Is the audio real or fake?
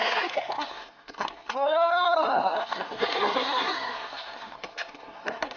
fake